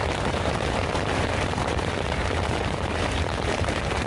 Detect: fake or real fake